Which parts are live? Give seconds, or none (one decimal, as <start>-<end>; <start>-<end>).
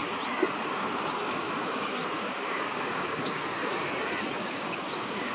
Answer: 0.0-0.6; 3.6-4.3